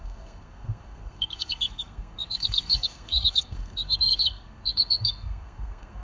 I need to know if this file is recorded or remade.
remade